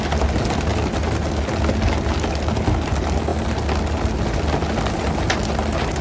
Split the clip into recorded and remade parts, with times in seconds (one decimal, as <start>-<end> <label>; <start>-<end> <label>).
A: 0.0-6.0 recorded